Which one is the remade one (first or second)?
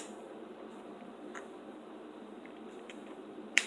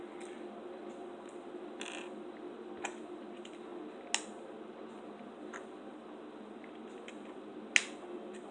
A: first